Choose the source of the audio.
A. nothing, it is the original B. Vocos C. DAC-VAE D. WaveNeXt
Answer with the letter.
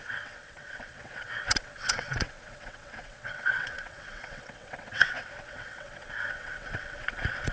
D